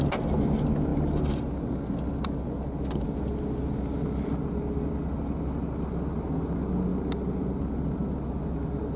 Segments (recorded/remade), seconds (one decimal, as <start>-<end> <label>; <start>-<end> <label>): 0.0-9.0 recorded